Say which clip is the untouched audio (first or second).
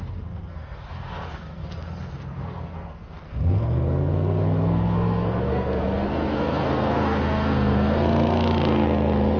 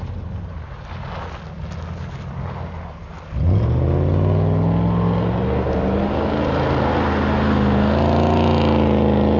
second